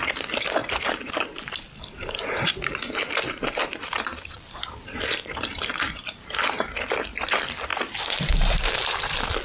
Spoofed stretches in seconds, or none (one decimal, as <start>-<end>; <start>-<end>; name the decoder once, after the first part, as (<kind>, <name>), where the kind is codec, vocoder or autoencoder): 0.6-1.6 (vocoder, BigVGAN v2); 3.6-6.4; 7.7-8.9

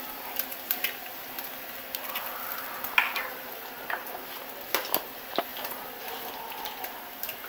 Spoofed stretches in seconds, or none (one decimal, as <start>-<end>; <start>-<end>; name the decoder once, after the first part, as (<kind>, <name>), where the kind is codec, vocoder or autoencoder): none